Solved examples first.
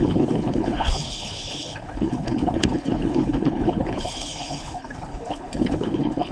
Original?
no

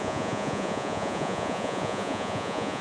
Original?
no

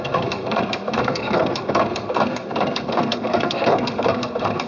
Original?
no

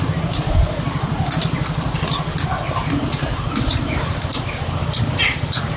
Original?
yes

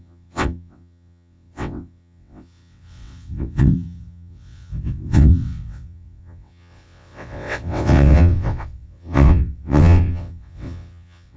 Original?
no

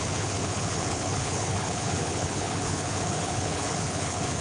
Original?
no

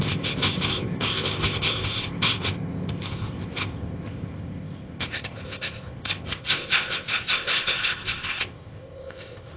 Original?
no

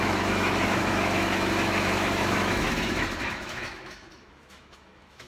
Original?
no